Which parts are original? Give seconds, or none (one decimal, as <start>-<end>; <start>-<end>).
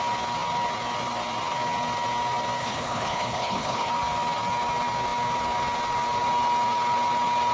0.0-2.6; 3.9-7.5